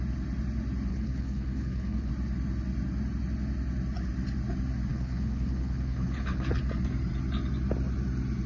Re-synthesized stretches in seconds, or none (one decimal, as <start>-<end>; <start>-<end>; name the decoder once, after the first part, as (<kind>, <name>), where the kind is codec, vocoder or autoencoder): 0.9-2.1 (codec, HILCodec); 4.9-6.6